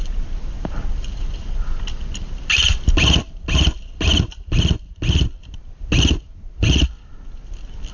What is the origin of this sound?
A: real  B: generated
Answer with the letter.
A